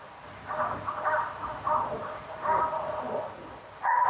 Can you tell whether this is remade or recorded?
recorded